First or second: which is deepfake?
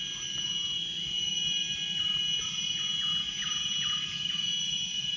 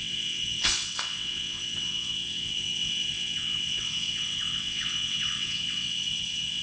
second